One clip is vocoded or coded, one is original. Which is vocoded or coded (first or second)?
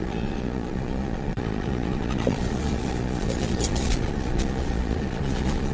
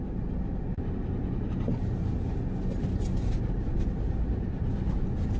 first